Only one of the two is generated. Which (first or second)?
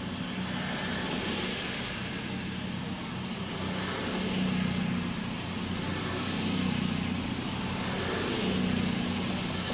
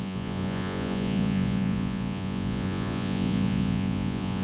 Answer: second